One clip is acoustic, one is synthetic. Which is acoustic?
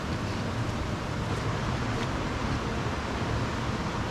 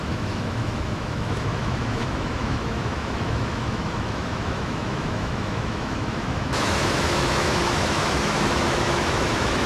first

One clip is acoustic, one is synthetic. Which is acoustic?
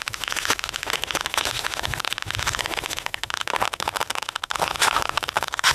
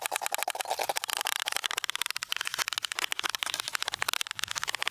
second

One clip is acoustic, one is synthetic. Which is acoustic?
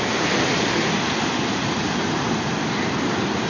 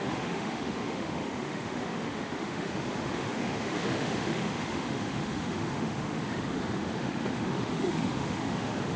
first